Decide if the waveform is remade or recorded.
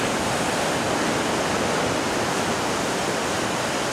recorded